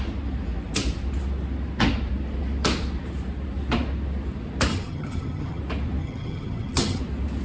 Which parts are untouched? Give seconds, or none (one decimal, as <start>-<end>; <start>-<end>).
0.0-4.7; 5.6-6.0; 7.0-7.4